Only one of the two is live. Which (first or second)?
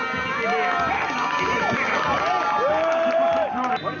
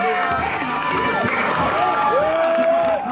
first